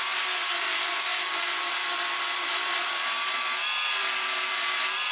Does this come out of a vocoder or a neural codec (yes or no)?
yes